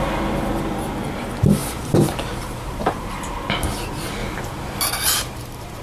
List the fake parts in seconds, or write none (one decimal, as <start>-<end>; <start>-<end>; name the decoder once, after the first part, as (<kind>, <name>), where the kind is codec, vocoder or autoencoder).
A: 1.6-3.3 (vocoder, BigVGAN v2)